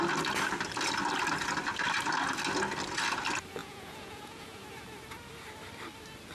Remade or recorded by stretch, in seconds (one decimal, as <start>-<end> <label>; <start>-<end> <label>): 0.0-3.6 recorded; 3.6-4.6 remade; 4.6-6.3 recorded